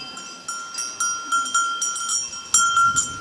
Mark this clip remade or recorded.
recorded